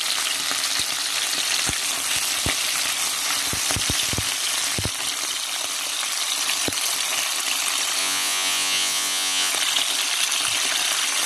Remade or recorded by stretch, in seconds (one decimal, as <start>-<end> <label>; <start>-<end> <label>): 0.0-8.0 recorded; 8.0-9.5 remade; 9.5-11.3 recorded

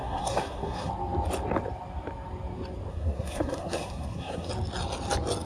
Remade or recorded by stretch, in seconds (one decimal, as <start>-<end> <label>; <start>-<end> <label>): 0.0-0.9 remade; 0.9-2.9 recorded; 2.9-4.5 remade; 4.5-5.5 recorded

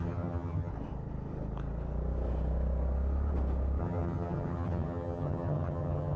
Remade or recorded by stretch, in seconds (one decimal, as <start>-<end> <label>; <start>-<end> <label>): 0.0-0.7 remade; 0.7-3.8 recorded; 3.8-6.2 remade

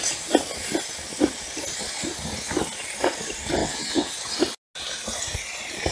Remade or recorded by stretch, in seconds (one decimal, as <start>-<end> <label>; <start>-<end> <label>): 0.0-3.6 recorded; 3.6-4.1 remade; 4.1-5.9 recorded